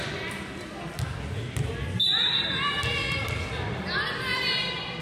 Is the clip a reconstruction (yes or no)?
no